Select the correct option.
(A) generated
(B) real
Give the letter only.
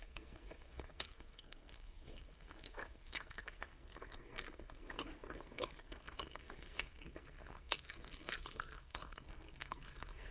A